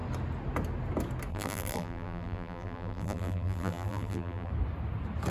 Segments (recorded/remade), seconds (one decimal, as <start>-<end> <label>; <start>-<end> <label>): 0.0-1.3 recorded; 1.3-4.5 remade; 4.5-5.3 recorded